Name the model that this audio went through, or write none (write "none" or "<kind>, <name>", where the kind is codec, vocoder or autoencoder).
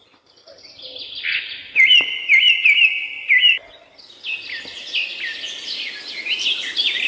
none